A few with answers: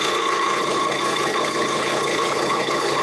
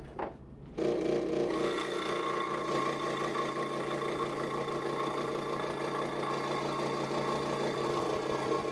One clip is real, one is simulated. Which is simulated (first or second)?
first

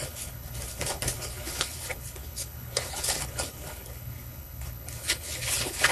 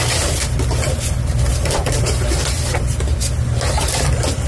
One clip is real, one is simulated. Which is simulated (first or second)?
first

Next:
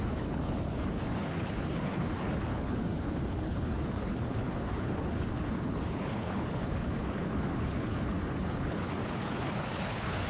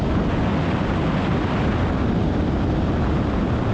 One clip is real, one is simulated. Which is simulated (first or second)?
first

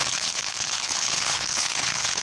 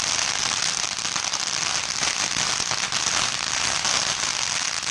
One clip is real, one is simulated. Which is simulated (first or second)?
first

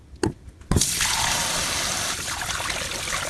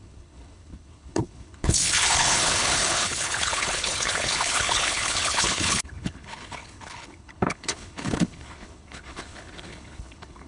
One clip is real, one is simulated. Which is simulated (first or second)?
second